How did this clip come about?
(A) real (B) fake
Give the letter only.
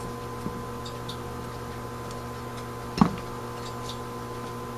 A